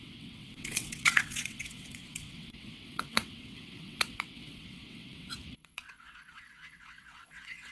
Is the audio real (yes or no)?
no